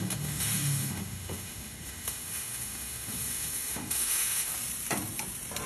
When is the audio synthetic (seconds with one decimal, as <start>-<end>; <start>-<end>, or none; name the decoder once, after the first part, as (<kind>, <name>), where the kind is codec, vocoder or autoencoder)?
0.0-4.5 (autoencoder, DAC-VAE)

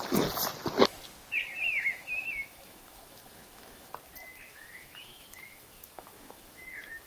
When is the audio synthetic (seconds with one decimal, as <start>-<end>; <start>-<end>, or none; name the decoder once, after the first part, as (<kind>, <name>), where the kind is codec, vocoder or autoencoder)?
1.6-3.9 (autoencoder, DAC-VAE); 4.5-6.6

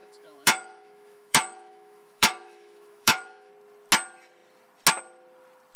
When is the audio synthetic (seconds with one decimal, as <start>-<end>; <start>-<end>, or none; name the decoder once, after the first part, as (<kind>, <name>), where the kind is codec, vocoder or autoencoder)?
0.0-3.5 (autoencoder, DAC-VAE)

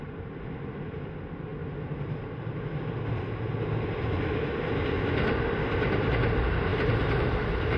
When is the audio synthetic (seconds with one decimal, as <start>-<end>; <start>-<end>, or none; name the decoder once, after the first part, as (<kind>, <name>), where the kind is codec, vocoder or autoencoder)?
none